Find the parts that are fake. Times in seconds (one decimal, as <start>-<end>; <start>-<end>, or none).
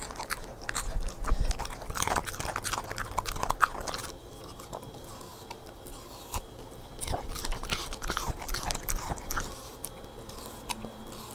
none